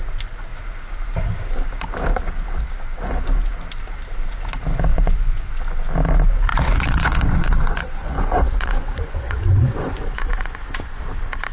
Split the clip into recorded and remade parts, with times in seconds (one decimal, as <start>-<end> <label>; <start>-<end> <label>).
0.0-4.9 recorded; 4.9-5.5 remade; 5.5-6.5 recorded; 6.5-11.0 remade; 11.0-11.5 recorded